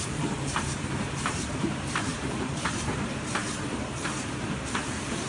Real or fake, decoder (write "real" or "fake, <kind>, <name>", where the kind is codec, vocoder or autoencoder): fake, vocoder, BigVGAN v2